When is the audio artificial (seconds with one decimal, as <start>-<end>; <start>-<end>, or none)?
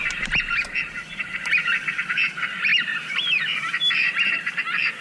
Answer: 0.0-5.0